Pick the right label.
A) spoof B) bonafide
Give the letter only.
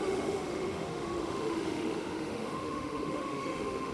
A